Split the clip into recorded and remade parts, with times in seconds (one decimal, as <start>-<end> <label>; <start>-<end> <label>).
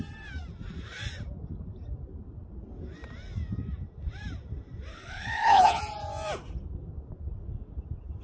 0.0-4.9 recorded; 4.9-5.8 remade; 5.8-8.2 recorded